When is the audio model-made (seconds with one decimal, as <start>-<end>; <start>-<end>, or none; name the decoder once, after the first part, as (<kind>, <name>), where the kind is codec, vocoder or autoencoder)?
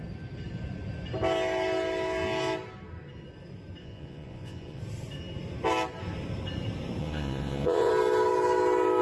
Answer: 3.8-4.8 (vocoder, Vocos); 7.0-7.9